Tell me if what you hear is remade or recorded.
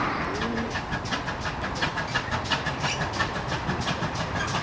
recorded